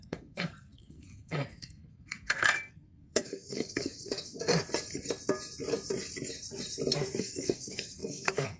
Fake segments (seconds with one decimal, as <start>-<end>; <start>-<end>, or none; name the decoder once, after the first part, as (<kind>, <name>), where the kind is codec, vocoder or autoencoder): 0.0-4.5 (codec, SNAC); 7.2-8.6